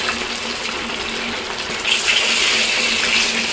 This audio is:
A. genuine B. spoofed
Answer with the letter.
A